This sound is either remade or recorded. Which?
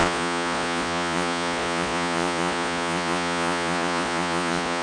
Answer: remade